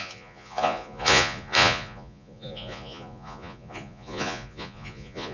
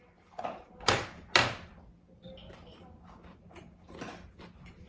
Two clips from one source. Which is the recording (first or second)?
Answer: second